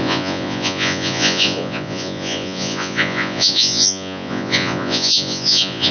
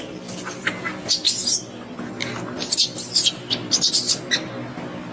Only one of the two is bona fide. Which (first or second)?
second